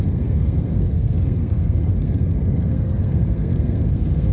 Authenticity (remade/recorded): remade